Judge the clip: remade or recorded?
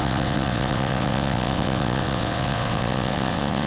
remade